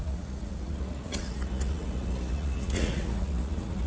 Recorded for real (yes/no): no